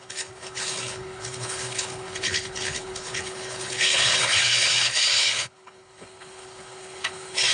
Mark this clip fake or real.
fake